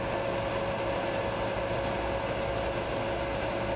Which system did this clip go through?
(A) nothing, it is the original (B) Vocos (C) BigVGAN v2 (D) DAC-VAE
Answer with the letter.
A